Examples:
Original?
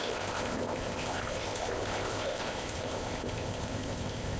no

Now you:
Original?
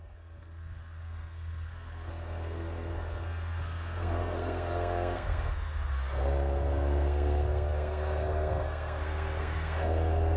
no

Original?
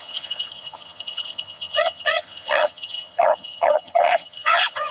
no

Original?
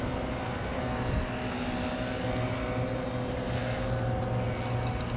yes